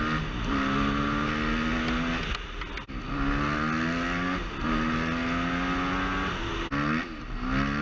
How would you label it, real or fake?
real